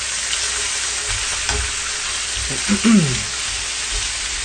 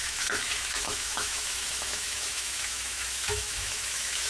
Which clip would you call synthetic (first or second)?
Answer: second